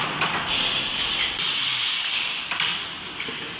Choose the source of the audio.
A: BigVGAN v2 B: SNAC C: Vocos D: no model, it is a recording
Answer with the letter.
A